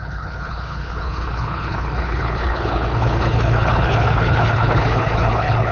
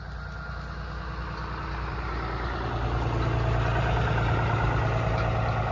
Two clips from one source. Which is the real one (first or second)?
second